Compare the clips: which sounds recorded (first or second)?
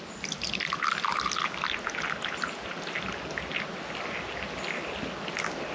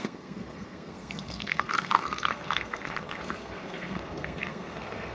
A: first